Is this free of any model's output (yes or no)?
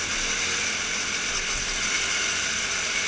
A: yes